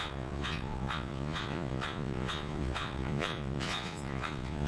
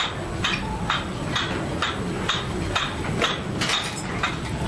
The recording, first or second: second